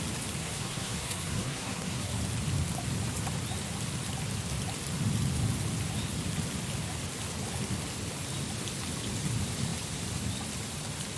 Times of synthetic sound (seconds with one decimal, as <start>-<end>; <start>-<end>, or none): 0.4-2.2